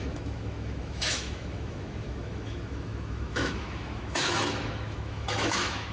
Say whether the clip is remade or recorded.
remade